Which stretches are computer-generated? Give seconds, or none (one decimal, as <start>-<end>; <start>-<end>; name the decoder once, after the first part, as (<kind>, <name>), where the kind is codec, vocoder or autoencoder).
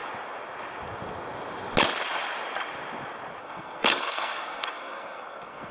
3.4-5.7 (codec, SNAC)